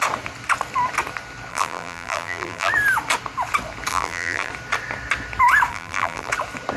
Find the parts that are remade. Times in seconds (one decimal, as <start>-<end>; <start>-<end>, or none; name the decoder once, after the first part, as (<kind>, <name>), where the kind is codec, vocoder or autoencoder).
1.5-2.7 (vocoder, BigVGAN v2); 3.9-4.5; 5.7-6.3